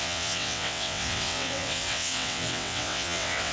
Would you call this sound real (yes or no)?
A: no